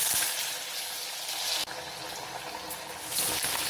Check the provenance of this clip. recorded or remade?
recorded